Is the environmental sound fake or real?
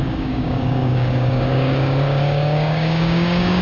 fake